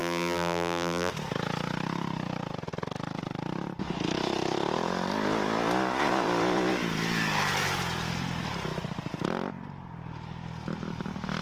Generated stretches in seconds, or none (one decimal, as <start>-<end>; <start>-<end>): 0.0-1.1